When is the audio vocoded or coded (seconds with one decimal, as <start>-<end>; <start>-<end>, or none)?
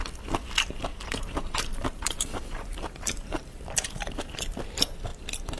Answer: 0.9-4.3